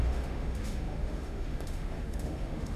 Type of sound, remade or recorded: remade